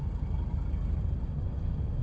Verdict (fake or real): real